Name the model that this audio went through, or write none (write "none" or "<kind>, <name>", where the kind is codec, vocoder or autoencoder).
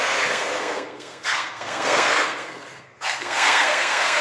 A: codec, SNAC